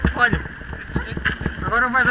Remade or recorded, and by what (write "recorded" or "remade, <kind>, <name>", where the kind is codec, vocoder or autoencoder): recorded